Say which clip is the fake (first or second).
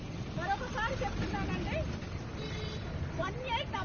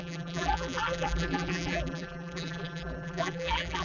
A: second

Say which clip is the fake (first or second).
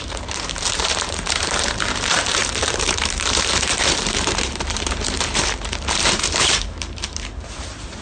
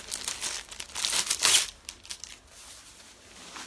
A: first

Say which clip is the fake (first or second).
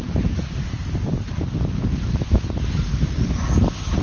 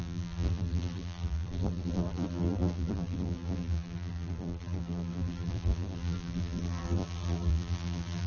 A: second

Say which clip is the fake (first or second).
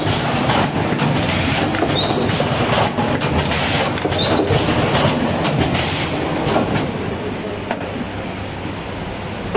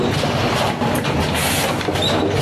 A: first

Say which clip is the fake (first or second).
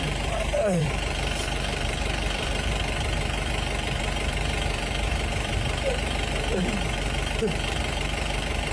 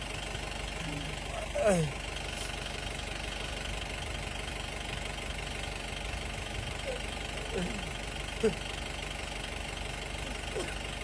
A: first